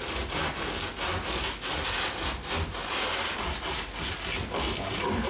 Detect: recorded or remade recorded